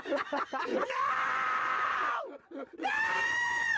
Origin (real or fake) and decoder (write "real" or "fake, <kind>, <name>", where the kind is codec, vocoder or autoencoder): fake, vocoder, Vocos